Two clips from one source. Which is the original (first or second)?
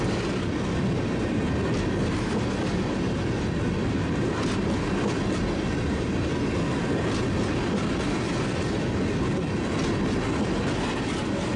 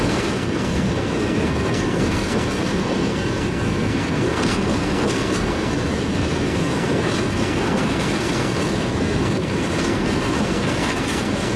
first